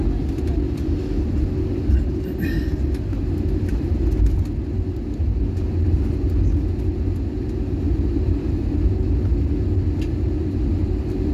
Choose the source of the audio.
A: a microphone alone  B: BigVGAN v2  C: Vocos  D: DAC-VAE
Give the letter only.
A